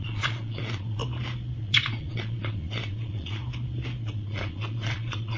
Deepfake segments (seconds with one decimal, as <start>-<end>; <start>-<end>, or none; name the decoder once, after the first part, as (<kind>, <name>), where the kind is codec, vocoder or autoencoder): 0.0-1.0 (vocoder, Vocos); 1.6-3.4; 4.0-5.4